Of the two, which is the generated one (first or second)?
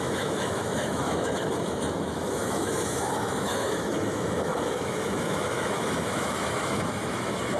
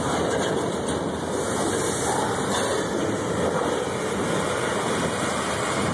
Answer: first